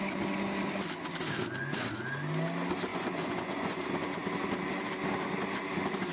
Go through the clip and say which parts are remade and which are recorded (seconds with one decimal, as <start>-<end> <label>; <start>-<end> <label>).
0.0-2.9 recorded; 2.9-3.8 remade; 3.8-6.1 recorded